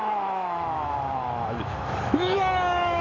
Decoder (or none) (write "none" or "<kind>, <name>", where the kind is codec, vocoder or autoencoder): autoencoder, DAC-VAE